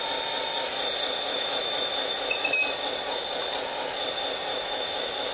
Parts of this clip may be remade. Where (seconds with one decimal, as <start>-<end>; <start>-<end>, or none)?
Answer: 1.3-2.6; 4.5-5.3